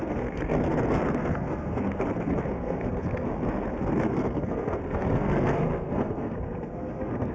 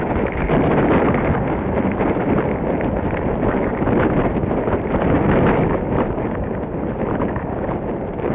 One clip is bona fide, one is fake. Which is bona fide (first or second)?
second